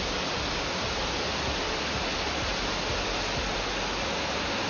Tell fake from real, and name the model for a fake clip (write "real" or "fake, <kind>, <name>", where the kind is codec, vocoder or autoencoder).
real